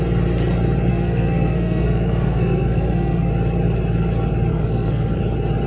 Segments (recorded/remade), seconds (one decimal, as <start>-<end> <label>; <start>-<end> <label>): 0.0-0.9 recorded; 0.9-3.3 remade; 3.3-4.5 recorded; 4.5-5.2 remade; 5.2-5.7 recorded